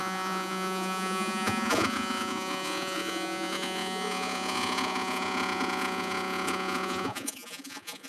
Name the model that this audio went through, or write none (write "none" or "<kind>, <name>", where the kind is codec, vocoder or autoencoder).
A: vocoder, Vocos